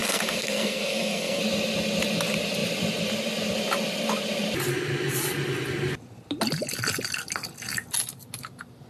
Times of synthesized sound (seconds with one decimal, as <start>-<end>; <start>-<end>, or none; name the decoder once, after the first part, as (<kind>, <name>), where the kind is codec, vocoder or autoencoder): 0.0-1.4 (codec, SNAC)